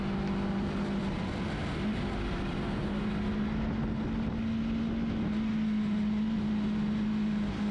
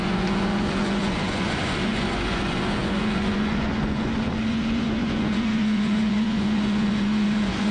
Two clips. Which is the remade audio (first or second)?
second